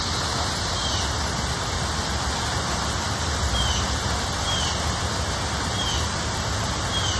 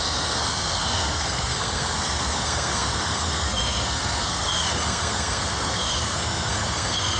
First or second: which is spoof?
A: second